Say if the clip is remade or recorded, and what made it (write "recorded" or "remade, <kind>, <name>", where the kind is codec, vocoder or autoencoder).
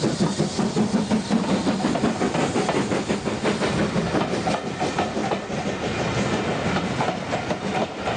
recorded